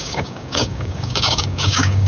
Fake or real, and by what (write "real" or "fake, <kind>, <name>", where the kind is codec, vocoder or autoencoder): fake, codec, DAC